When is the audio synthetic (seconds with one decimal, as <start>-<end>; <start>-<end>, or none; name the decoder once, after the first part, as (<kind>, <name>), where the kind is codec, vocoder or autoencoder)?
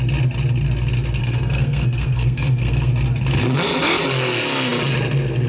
1.2-2.9 (codec, SNAC)